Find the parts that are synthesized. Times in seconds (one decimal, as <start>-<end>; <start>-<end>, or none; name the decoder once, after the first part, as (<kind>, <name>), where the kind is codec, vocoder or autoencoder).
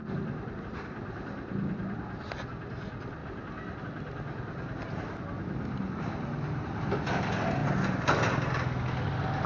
0.0-0.6 (vocoder, BigVGAN v2); 3.2-3.8; 7.6-8.3